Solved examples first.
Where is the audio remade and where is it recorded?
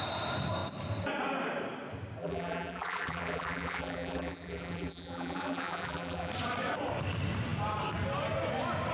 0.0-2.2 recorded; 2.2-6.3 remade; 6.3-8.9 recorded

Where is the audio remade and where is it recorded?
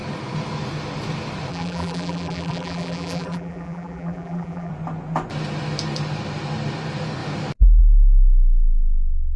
0.0-1.5 recorded; 1.5-4.7 remade; 4.7-9.4 recorded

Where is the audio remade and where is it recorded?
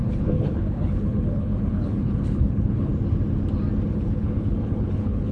0.0-2.9 remade; 2.9-3.9 recorded; 3.9-5.3 remade